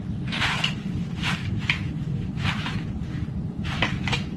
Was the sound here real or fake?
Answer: real